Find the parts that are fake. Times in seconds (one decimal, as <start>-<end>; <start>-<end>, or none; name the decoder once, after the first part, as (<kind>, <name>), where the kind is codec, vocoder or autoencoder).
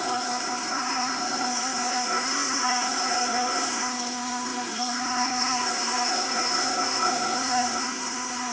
0.0-8.5 (codec, SNAC)